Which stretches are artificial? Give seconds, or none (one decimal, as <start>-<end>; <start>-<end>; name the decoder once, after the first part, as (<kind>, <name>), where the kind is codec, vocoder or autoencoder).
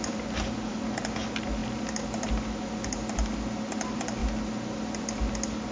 1.6-3.6 (vocoder, BigVGAN v2); 4.2-5.3